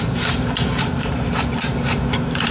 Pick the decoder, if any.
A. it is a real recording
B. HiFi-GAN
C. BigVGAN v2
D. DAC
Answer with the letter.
C